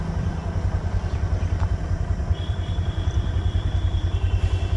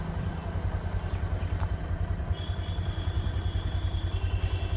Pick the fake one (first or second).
first